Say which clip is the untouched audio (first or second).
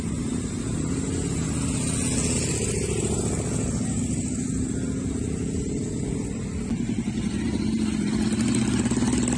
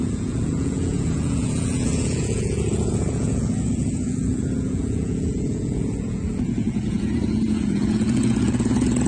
first